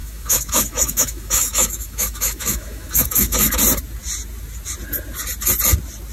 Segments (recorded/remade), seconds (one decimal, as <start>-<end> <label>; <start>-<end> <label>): 0.0-3.5 remade; 3.5-6.1 recorded